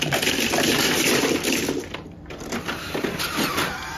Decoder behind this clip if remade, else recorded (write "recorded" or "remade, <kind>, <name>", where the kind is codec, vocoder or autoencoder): remade, vocoder, BigVGAN v2